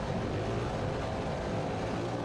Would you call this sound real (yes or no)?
yes